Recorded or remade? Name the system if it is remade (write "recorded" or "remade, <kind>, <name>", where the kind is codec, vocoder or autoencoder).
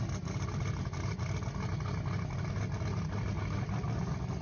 recorded